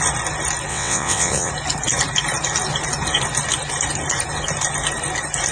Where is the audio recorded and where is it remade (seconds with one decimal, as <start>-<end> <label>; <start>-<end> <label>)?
0.0-0.7 recorded; 0.7-1.5 remade; 1.5-5.5 recorded